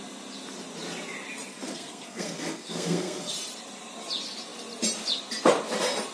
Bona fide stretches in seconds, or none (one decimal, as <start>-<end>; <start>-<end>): 0.0-1.5; 3.3-6.1